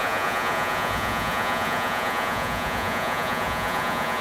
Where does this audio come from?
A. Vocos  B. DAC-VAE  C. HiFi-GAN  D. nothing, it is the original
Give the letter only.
A